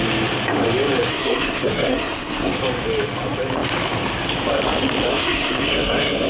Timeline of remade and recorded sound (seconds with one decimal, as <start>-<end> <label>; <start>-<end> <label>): 0.0-1.1 recorded; 1.1-2.5 remade; 2.5-5.1 recorded; 5.1-6.3 remade